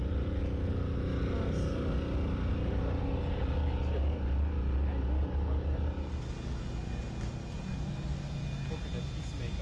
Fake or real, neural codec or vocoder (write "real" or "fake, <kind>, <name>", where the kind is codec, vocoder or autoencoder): real